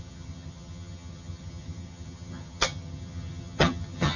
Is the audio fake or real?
fake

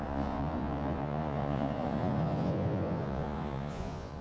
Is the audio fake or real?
fake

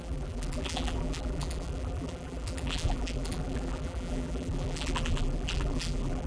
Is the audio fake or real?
fake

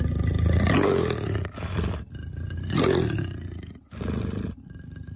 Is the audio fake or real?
real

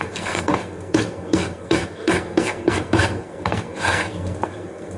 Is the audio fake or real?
fake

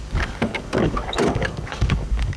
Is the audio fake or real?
fake